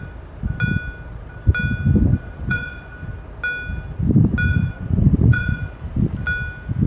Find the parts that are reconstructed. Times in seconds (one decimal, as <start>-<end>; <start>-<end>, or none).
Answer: 2.1-2.9; 4.5-5.8